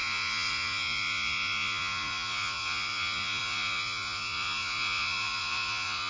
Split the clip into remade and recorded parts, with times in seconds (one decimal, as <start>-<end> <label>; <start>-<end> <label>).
0.0-6.1 remade